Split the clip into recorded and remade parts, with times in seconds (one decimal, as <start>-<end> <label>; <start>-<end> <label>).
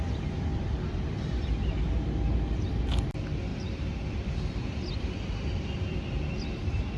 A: 0.0-0.5 recorded; 0.5-2.7 remade; 2.7-3.5 recorded; 3.5-6.0 remade; 6.0-7.0 recorded